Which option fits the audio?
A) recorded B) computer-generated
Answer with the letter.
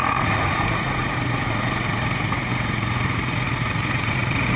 B